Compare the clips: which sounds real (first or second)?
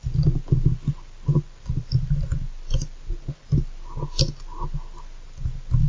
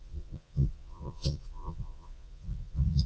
first